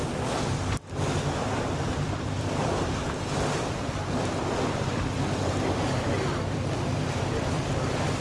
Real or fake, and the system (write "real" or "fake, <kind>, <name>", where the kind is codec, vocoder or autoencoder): fake, vocoder, BigVGAN v2